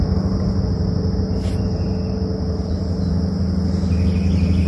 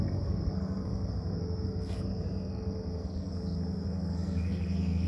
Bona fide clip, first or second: first